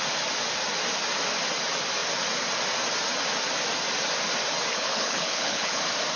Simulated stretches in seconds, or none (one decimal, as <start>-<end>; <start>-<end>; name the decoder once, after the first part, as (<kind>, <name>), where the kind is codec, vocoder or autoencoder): 4.7-5.8 (codec, HILCodec)